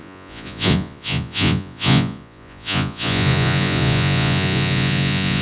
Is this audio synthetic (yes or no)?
yes